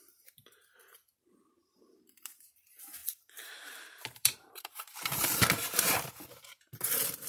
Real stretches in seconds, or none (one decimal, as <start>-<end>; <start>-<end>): none